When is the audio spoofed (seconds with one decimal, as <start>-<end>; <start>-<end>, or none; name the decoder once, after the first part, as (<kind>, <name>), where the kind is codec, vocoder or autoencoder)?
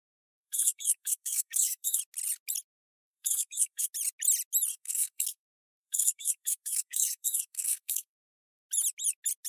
0.0-2.0 (codec, SNAC); 2.8-3.9; 4.7-8.6